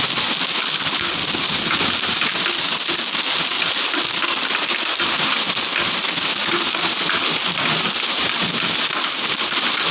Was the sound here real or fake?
real